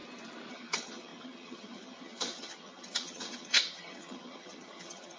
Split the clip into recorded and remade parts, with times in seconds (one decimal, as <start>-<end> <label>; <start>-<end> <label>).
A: 0.0-0.5 recorded; 0.5-5.2 remade